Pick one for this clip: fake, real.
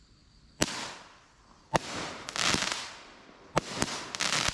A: real